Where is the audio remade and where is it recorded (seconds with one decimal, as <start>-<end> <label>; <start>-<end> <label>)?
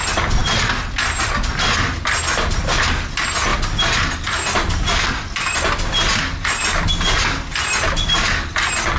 0.0-9.0 recorded